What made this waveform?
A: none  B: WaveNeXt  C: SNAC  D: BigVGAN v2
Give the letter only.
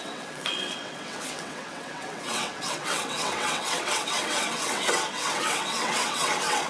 B